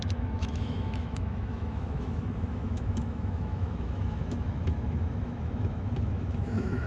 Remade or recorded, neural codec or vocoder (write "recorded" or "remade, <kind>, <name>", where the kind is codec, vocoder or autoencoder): remade, autoencoder, DAC-VAE